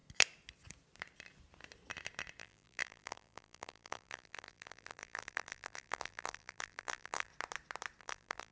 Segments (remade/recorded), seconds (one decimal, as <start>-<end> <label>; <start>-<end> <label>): 0.0-2.4 recorded; 2.4-7.3 remade; 7.3-8.0 recorded; 8.0-8.5 remade

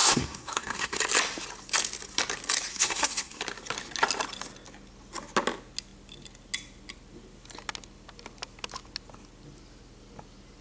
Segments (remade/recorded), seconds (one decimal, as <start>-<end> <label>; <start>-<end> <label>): 0.0-1.0 remade; 1.0-2.7 recorded; 2.7-3.4 remade; 3.4-10.6 recorded